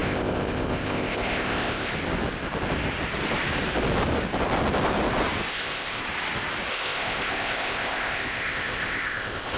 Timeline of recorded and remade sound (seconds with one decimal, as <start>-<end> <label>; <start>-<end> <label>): 0.0-1.9 remade; 1.9-5.5 recorded; 5.5-6.0 remade; 6.0-6.7 recorded; 6.7-9.6 remade